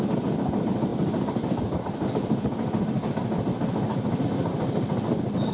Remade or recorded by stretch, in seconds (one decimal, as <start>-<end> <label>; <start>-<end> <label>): 0.0-5.5 recorded